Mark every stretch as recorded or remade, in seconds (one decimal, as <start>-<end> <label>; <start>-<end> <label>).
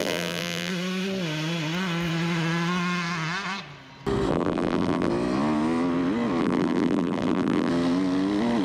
0.0-0.7 remade; 0.7-4.3 recorded; 4.3-5.1 remade; 5.1-6.4 recorded; 6.4-7.7 remade; 7.7-8.6 recorded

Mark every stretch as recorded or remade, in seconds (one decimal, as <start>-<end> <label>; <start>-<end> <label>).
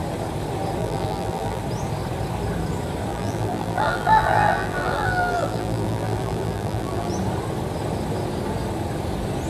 0.0-0.8 recorded; 0.8-1.6 remade; 1.6-3.1 recorded; 3.1-7.1 remade; 7.1-9.5 recorded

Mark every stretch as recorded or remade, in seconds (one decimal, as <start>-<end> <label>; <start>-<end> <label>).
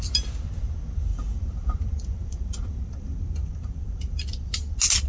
0.0-1.1 recorded; 1.1-4.2 remade; 4.2-5.1 recorded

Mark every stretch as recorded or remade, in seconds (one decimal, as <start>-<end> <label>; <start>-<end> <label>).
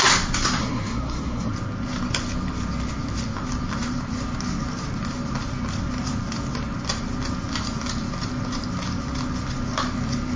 0.0-0.6 recorded; 0.6-1.5 remade; 1.5-10.4 recorded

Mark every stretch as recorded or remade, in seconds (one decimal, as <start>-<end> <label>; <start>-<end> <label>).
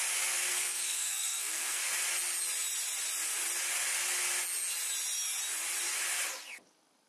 0.0-0.5 recorded; 0.5-1.8 remade; 1.8-7.1 recorded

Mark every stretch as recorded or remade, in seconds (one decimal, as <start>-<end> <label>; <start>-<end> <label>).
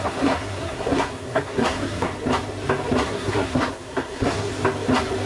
0.0-2.1 remade; 2.1-3.0 recorded; 3.0-4.5 remade; 4.5-5.3 recorded